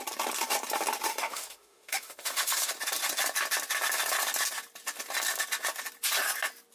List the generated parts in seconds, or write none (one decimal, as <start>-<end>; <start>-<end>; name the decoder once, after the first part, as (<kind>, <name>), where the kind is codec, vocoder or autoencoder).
1.1-2.7 (autoencoder, DAC-VAE)

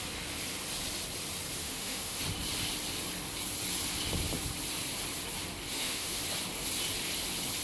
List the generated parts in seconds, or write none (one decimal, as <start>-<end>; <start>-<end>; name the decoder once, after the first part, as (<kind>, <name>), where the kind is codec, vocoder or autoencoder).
1.6-2.2 (autoencoder, DAC-VAE); 5.7-6.2

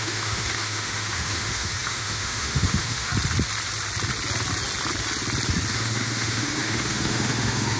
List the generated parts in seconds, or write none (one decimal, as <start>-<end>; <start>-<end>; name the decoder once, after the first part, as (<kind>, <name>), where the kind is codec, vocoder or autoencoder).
0.0-3.1 (autoencoder, DAC-VAE); 5.7-7.8

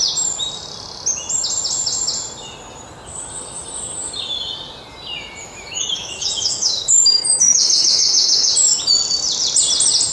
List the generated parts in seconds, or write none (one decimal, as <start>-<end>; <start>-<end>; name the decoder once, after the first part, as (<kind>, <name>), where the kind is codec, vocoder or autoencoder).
5.4-8.5 (autoencoder, DAC-VAE)

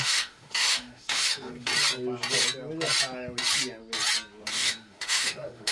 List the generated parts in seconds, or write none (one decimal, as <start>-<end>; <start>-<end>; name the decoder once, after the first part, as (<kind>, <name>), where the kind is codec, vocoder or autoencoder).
0.0-1.7 (autoencoder, DAC-VAE); 4.5-5.7

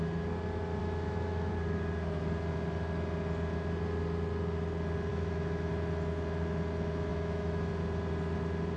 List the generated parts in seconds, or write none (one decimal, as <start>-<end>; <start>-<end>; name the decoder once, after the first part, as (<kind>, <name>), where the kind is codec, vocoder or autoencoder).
0.8-1.5 (autoencoder, DAC-VAE); 5.1-5.7; 7.1-7.7